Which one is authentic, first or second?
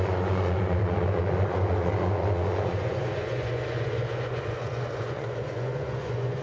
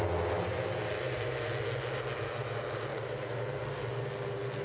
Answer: second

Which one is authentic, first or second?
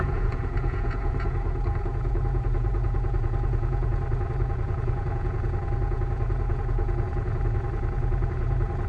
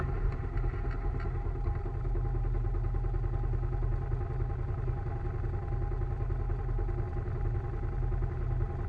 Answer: second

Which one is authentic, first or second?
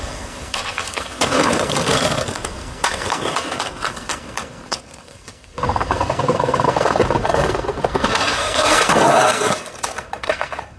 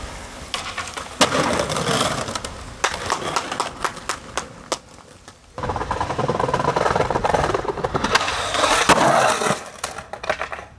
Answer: second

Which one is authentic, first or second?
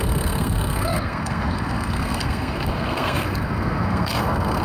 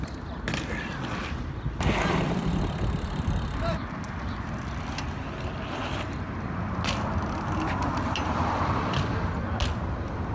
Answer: second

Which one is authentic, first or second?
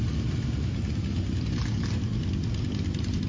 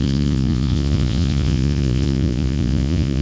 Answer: first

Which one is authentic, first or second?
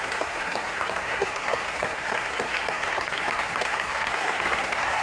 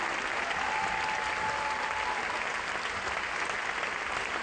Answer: second